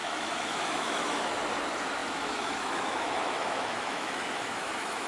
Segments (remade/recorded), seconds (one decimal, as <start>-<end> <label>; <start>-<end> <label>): 0.0-1.3 remade; 1.3-2.0 recorded; 2.0-5.1 remade